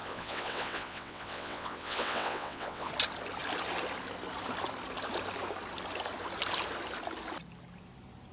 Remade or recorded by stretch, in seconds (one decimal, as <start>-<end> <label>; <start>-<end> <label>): 0.0-2.9 remade; 2.9-8.3 recorded